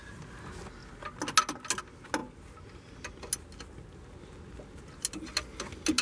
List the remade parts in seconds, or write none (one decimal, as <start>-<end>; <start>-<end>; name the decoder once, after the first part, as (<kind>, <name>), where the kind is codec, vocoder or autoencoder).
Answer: none